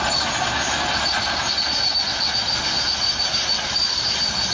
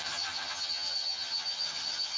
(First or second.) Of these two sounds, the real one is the first